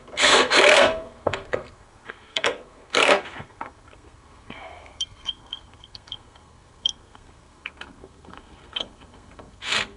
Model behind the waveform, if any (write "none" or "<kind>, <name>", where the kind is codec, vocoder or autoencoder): codec, SNAC